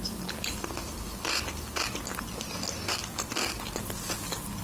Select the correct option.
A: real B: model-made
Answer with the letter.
A